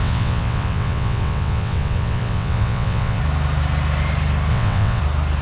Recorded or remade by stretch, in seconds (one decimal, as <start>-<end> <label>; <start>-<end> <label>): 0.0-3.2 remade; 3.2-4.5 recorded; 4.5-5.0 remade; 5.0-5.4 recorded